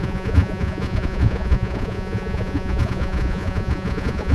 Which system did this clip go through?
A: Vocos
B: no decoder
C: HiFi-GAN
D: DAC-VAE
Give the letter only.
A